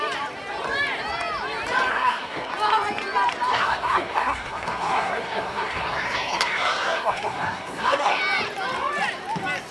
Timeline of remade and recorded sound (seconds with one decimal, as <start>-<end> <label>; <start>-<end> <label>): 0.0-1.9 recorded; 1.9-2.5 remade; 2.5-3.5 recorded; 3.5-8.2 remade; 8.2-9.7 recorded

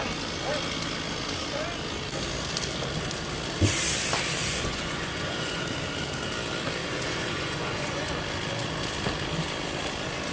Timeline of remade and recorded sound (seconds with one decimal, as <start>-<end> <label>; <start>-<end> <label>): 0.0-4.4 recorded; 4.4-5.6 remade; 5.6-6.8 recorded; 6.8-8.1 remade; 8.1-10.3 recorded

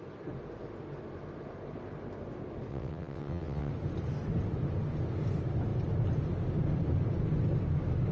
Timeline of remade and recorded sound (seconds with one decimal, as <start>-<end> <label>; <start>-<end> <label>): 0.0-2.7 recorded; 2.7-3.7 remade; 3.7-8.1 recorded

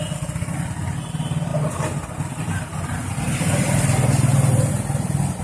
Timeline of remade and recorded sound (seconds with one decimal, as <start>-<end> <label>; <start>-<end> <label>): 0.0-1.5 recorded; 1.5-4.7 remade; 4.7-5.4 recorded

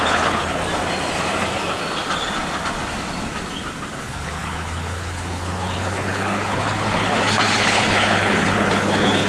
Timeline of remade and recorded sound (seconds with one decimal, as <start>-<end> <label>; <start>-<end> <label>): 0.0-0.6 remade; 0.6-4.0 recorded; 4.0-9.3 remade

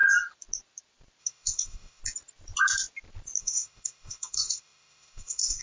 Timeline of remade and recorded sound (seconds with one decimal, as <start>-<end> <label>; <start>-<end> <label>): 0.0-1.2 recorded; 1.2-2.0 remade; 2.0-3.4 recorded; 3.4-5.6 remade